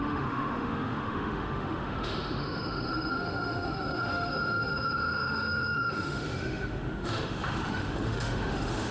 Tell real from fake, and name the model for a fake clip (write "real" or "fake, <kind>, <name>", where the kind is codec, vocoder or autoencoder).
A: fake, autoencoder, DAC-VAE